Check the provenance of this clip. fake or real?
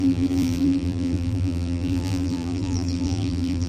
fake